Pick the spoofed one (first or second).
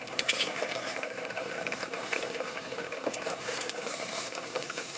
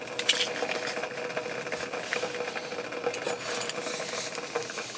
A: first